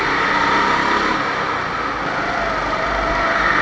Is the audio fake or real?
real